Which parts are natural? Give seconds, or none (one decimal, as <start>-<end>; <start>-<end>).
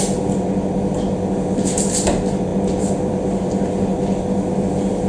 0.0-5.1